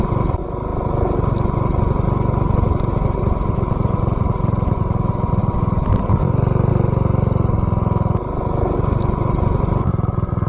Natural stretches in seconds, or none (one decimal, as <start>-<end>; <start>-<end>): 0.0-10.5